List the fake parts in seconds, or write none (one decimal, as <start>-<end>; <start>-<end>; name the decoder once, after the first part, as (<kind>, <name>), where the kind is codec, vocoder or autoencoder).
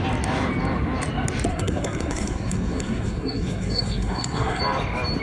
1.5-4.6 (codec, SNAC)